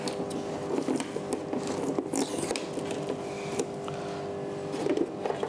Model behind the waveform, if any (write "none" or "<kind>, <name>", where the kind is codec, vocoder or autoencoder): none